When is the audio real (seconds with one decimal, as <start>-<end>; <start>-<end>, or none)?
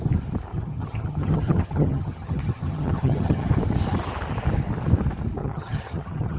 0.0-0.5; 3.5-5.4